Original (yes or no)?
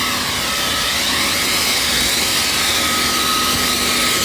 yes